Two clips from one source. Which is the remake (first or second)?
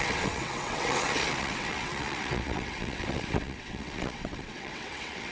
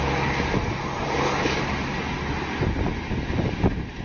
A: first